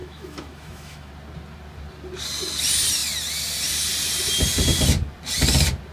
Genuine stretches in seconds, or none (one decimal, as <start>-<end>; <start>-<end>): 1.1-5.9